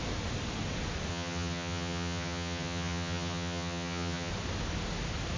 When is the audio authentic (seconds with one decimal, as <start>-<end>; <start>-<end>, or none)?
0.0-1.1; 4.3-5.4